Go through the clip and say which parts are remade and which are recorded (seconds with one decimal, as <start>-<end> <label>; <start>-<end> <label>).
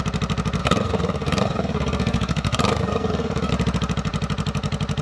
0.0-0.6 recorded; 0.6-3.5 remade; 3.5-5.0 recorded